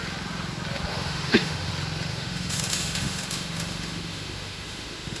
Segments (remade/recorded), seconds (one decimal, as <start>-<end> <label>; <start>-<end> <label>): 0.0-0.9 recorded; 0.9-1.7 remade; 1.7-2.1 recorded; 2.1-5.2 remade